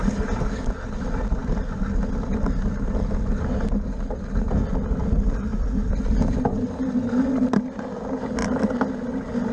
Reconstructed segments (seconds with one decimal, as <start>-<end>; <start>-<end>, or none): none